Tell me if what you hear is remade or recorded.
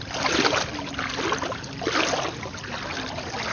recorded